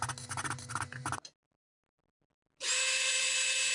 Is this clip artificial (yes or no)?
no